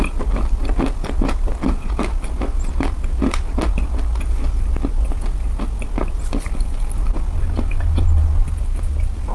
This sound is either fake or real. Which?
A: real